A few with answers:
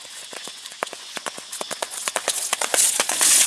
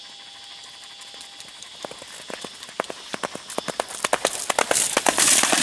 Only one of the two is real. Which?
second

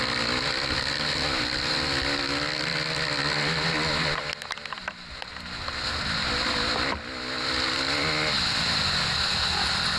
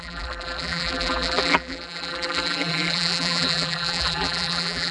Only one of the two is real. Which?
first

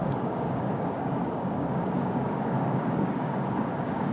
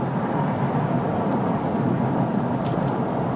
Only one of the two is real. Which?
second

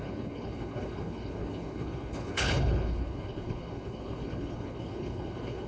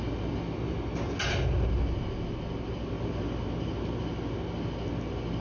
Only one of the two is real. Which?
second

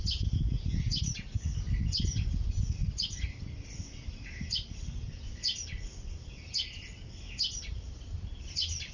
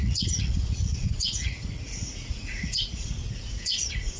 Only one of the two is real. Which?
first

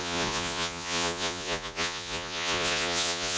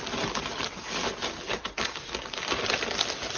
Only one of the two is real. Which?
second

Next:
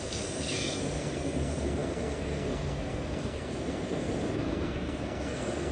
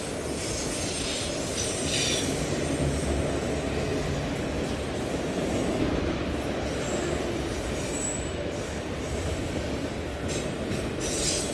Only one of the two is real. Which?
second